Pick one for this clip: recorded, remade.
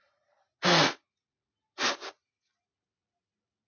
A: recorded